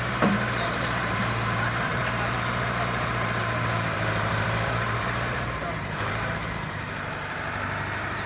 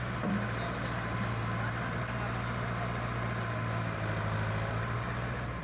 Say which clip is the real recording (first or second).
second